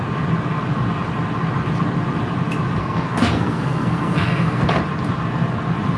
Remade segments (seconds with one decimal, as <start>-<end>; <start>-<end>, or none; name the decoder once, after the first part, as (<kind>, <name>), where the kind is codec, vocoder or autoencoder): 2.8-4.8 (codec, SNAC)